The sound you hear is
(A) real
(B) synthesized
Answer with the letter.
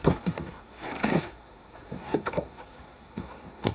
B